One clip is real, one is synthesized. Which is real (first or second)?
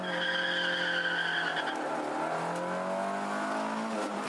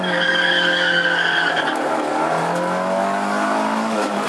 first